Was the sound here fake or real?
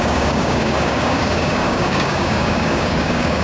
fake